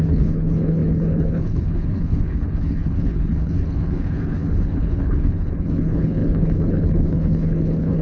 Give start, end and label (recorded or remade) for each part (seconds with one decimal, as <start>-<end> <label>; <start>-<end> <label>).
0.0-8.0 remade